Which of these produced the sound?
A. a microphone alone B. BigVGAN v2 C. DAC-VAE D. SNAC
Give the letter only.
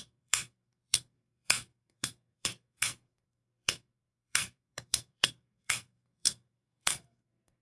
D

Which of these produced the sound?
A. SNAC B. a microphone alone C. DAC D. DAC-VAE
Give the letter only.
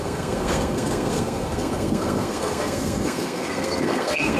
A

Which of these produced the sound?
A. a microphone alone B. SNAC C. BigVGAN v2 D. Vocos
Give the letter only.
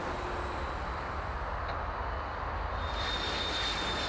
A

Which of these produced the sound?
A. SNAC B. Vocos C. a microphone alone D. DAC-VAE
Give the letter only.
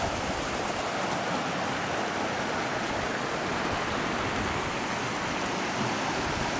C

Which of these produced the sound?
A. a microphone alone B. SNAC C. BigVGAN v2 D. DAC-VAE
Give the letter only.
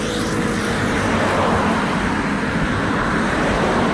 A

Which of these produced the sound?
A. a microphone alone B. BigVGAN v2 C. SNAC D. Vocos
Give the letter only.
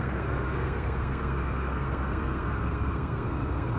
C